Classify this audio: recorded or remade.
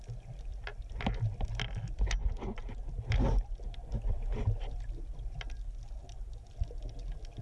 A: recorded